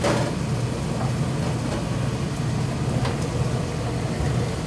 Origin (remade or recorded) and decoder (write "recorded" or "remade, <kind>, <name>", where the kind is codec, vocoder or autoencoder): recorded